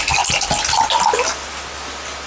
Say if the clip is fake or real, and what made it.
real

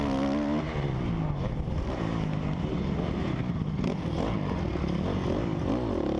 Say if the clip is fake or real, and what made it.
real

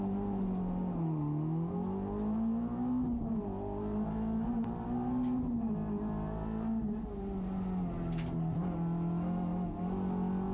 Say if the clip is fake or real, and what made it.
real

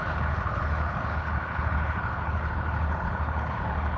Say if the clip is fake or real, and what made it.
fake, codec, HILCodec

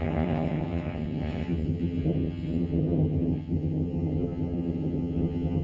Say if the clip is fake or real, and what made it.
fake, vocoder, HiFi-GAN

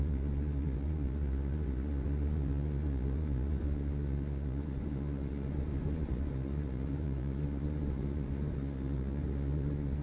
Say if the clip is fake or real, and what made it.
fake, vocoder, Vocos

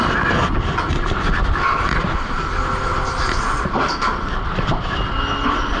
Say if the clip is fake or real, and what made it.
real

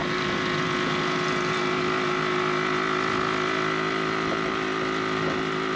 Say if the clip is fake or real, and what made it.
real